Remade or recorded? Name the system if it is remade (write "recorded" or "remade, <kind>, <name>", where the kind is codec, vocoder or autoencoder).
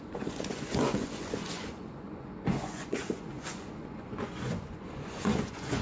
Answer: remade, vocoder, Vocos